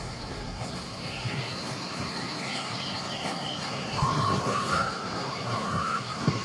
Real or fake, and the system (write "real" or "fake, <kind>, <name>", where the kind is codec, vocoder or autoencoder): fake, codec, SNAC